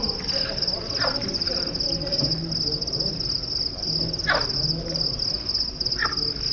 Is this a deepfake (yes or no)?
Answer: no